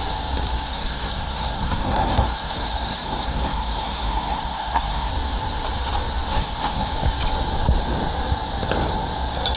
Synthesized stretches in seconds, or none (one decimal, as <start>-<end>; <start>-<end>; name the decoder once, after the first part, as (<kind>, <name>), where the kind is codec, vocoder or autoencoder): 0.7-5.1 (codec, SNAC); 6.3-6.9